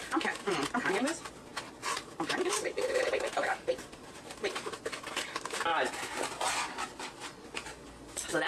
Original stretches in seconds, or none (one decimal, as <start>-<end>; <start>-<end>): 0.0-8.5